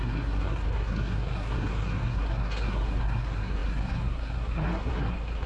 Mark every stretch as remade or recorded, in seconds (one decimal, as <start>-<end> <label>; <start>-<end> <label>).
0.0-5.5 remade